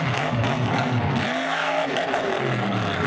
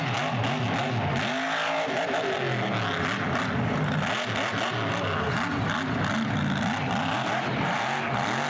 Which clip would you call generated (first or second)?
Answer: first